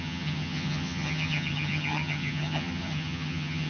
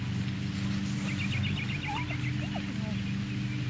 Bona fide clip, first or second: second